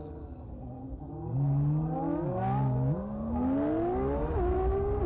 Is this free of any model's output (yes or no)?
yes